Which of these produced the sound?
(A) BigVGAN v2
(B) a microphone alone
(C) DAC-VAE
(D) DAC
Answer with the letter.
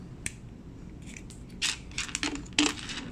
B